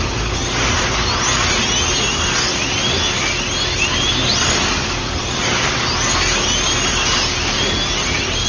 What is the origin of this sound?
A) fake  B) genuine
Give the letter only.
B